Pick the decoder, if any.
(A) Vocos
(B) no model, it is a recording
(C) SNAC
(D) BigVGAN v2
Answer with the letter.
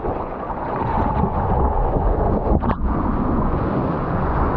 A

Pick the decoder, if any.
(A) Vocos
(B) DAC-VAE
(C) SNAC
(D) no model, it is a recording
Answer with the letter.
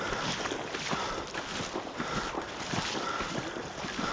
D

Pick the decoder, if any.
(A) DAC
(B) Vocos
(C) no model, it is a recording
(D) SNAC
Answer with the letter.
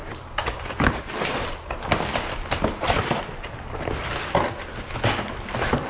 C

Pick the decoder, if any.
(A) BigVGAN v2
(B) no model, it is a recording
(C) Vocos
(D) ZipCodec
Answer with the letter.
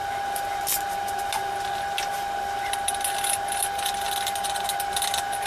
B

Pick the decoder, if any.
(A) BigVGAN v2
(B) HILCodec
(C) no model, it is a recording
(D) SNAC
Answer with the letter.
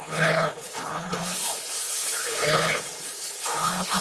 B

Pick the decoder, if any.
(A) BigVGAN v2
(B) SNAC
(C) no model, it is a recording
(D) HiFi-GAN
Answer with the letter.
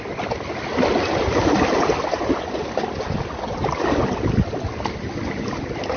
C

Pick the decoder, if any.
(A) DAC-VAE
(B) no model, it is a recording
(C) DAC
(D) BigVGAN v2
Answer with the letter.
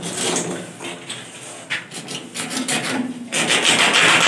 B